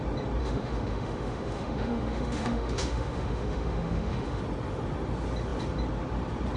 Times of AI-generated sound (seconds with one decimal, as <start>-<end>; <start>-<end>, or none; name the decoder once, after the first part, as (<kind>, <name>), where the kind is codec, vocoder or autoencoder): 0.4-4.4 (autoencoder, DAC-VAE)